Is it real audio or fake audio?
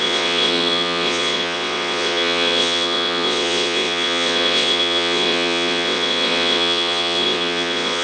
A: fake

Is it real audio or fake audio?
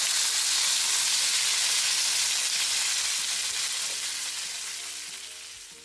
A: real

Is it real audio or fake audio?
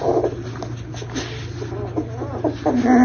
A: real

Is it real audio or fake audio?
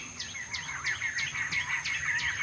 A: real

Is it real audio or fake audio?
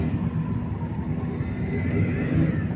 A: real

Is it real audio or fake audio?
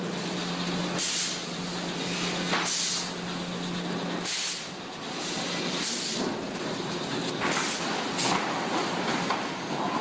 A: real